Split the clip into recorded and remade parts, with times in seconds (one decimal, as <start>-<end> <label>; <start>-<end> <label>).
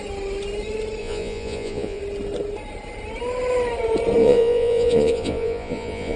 0.0-1.0 recorded; 1.0-2.0 remade; 2.0-4.2 recorded; 4.2-6.2 remade